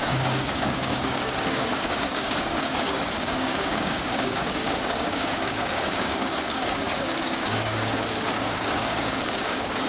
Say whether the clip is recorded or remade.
remade